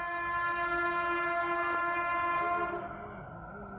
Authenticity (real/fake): real